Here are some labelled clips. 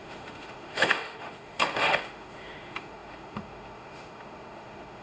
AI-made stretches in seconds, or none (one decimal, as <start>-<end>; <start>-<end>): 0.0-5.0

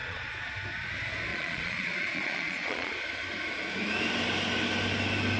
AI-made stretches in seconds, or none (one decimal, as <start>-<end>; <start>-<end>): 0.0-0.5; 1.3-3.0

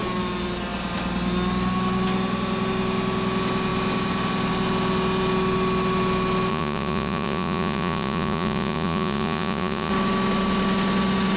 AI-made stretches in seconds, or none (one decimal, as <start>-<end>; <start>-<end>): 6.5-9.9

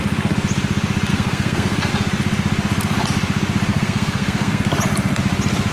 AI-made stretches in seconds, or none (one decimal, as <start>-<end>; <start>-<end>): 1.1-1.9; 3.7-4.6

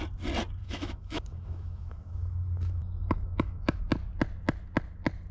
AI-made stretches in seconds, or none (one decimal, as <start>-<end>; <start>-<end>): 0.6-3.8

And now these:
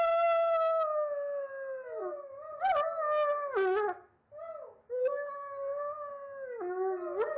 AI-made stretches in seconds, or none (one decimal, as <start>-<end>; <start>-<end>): none

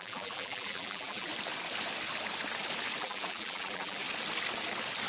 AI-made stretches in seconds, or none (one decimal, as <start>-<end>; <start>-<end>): 0.0-1.3; 3.0-4.0